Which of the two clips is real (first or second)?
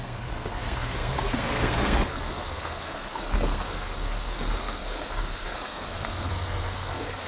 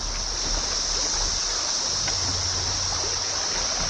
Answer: second